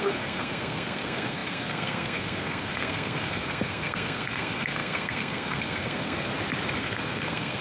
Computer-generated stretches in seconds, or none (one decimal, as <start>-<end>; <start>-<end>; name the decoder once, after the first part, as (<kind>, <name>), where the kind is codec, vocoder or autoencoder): 0.0-6.3 (codec, SNAC); 6.8-7.6